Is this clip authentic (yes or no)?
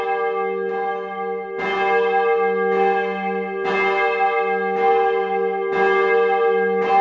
yes